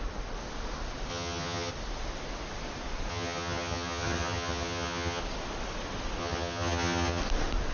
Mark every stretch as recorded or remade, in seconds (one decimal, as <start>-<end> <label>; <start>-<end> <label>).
0.0-1.1 recorded; 1.1-1.7 remade; 1.7-3.1 recorded; 3.1-5.2 remade; 5.2-6.2 recorded; 6.2-7.2 remade; 7.2-7.7 recorded